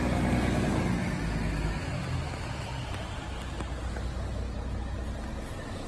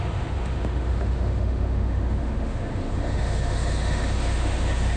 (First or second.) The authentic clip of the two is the first